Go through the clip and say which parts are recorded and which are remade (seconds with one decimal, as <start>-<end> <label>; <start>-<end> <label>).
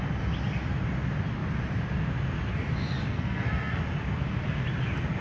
0.0-3.1 recorded; 3.1-3.8 remade; 3.8-5.2 recorded